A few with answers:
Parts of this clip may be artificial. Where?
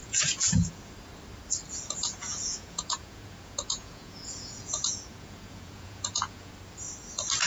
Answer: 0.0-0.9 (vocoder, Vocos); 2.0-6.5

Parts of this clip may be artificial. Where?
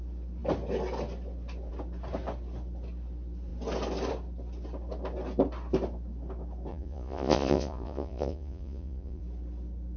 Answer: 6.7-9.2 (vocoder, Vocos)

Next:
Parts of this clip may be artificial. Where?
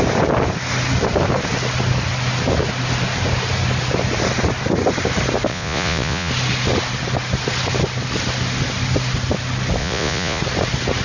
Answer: 5.5-6.3 (vocoder, Vocos); 9.8-10.4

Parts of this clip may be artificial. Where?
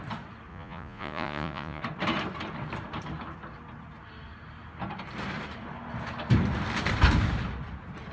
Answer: 0.5-1.8 (vocoder, Vocos)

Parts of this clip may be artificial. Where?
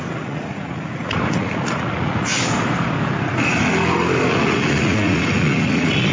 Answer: 0.0-2.3 (vocoder, Vocos); 4.3-6.1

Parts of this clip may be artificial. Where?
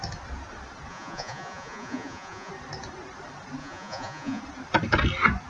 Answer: 0.9-2.5 (vocoder, Vocos); 3.6-4.4